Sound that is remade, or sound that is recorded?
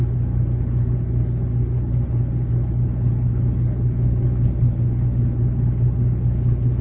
remade